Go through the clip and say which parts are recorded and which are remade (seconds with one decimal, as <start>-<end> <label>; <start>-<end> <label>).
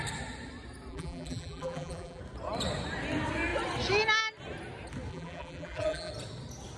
0.0-0.9 recorded; 0.9-2.2 remade; 2.2-5.1 recorded; 5.1-6.1 remade; 6.1-6.8 recorded